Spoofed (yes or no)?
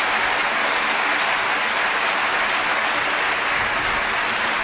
no